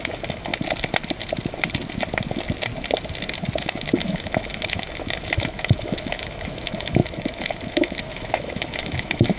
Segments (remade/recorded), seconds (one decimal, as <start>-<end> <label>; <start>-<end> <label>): 0.0-0.5 remade; 0.5-3.6 recorded; 3.6-9.4 remade